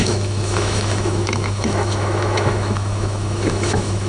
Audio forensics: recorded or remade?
remade